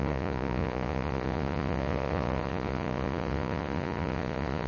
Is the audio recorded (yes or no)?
no